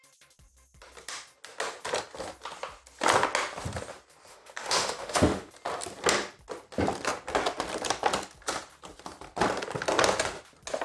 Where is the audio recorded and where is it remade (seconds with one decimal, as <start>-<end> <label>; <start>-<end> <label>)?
0.0-4.3 recorded; 4.3-5.5 remade; 5.5-10.8 recorded